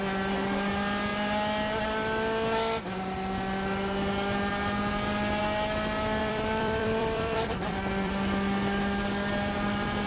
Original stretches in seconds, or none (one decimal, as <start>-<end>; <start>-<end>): 0.0-6.2; 8.1-10.1